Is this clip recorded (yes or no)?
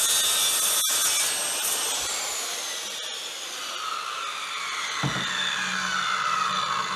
yes